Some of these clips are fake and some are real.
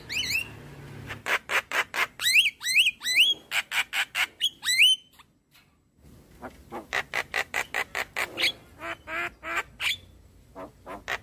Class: real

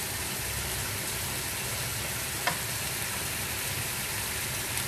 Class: real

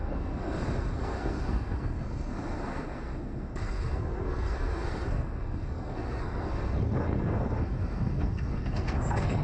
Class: fake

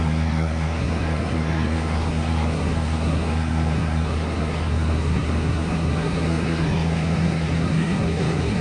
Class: fake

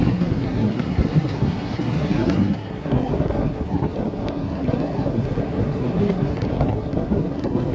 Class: fake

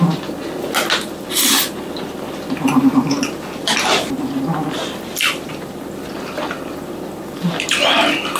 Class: real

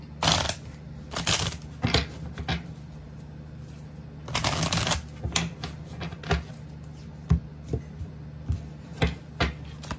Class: real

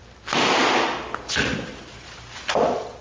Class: real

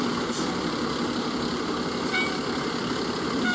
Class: real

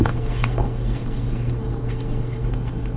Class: fake